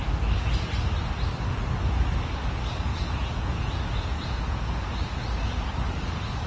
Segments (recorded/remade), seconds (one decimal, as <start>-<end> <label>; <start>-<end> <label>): 0.0-2.9 recorded; 2.9-4.6 remade; 4.6-6.5 recorded